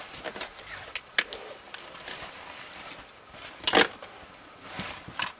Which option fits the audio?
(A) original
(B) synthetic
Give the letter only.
A